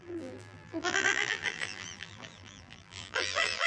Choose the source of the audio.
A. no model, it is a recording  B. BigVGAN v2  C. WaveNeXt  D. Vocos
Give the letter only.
B